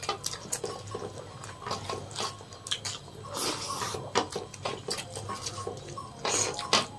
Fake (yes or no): no